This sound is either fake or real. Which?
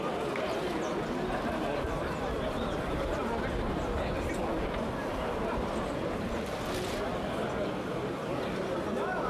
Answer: real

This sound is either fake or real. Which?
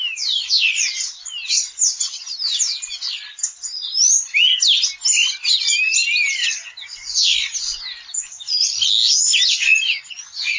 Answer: real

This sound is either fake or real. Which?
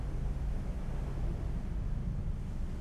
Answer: real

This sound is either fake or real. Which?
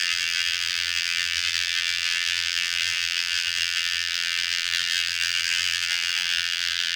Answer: fake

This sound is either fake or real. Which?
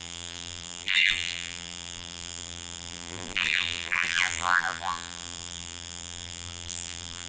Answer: fake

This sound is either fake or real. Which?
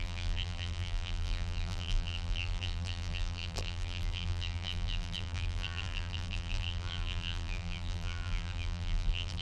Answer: fake